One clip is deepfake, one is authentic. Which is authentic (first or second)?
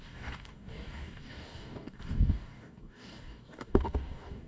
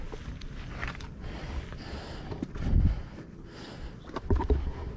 second